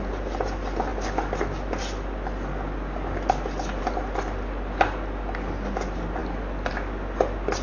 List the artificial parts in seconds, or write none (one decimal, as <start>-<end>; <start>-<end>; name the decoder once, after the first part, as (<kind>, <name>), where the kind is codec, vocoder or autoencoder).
none